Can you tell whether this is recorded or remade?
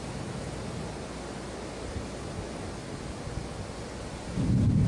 recorded